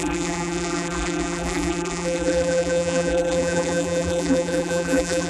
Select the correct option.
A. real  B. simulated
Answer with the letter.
B